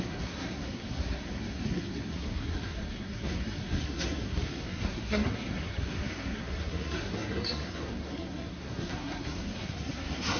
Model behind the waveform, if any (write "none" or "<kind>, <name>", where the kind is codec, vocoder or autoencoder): codec, SNAC